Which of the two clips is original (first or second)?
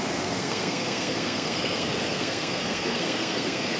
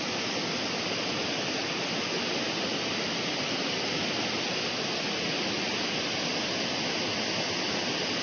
second